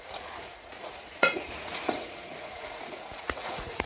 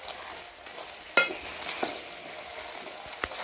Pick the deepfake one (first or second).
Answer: first